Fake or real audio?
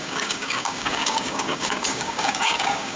fake